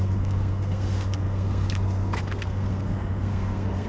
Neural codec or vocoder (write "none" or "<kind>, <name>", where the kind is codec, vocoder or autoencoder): codec, SNAC